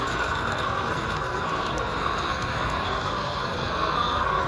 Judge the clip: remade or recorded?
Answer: remade